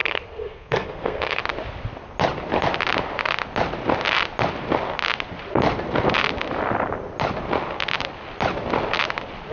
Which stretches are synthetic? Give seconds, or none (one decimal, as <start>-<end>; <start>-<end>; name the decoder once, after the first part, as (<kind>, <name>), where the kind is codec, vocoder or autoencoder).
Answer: 0.0-1.4 (codec, SNAC)

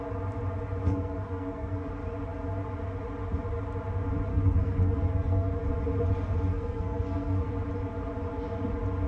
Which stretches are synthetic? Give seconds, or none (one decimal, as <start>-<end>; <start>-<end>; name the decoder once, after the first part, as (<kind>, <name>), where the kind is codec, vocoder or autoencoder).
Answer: 0.8-1.9 (codec, SNAC); 4.3-5.5; 6.5-7.5

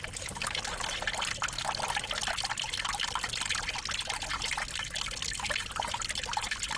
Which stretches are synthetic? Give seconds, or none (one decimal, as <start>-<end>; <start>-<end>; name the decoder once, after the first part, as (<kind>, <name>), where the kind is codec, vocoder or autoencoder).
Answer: none

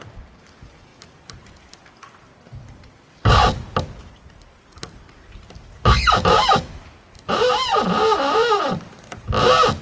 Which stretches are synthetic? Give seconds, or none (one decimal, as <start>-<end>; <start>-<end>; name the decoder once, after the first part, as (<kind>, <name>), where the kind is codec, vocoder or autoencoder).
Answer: none